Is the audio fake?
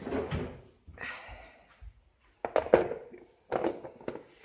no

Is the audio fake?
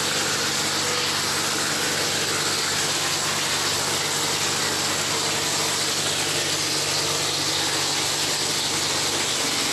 no